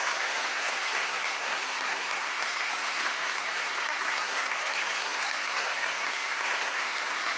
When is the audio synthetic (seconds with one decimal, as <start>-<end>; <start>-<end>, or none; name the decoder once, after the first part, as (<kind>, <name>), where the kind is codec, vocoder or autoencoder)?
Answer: 0.0-7.4 (codec, SNAC)

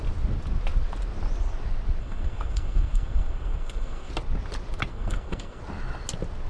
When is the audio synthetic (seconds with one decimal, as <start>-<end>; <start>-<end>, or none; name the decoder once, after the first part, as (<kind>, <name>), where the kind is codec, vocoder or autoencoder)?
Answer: 2.0-4.1 (codec, SNAC); 4.9-5.6

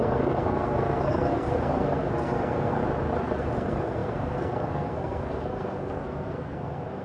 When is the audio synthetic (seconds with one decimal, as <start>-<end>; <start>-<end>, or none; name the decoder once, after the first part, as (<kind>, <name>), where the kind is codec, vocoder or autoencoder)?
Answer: 0.0-2.8 (codec, SNAC); 3.4-7.0

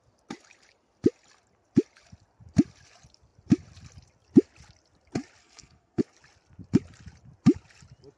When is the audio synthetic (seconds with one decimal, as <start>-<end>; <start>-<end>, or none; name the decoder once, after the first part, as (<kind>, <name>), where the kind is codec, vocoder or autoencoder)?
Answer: 5.4-6.0 (codec, SNAC)